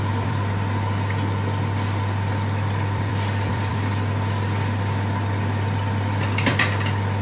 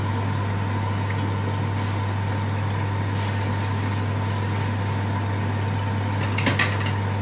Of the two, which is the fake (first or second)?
first